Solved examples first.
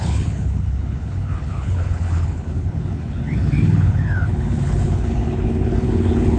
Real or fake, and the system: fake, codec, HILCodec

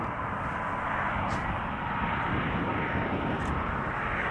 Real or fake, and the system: real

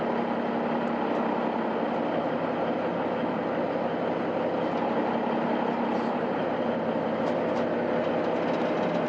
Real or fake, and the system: real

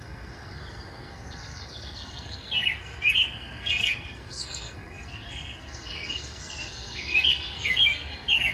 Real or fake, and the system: fake, codec, SNAC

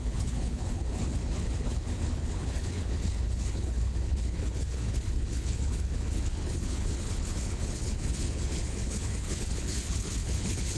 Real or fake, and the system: fake, codec, HILCodec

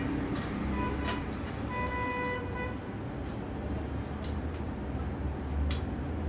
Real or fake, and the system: real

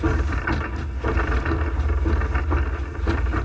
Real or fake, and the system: real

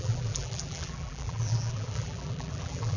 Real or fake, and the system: fake, vocoder, BigVGAN v2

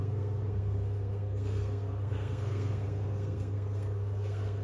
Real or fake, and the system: fake, codec, SNAC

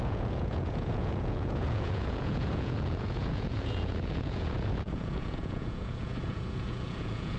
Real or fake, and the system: fake, vocoder, Vocos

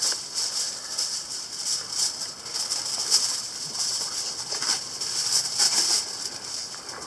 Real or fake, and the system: real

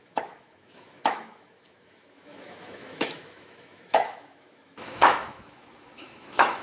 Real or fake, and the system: fake, autoencoder, DAC-VAE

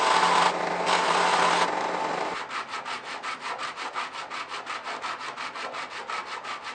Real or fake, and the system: real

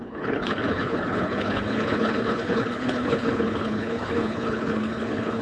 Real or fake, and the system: fake, codec, HILCodec